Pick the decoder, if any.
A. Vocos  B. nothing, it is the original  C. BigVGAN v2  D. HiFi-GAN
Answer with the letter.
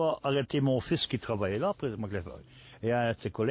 B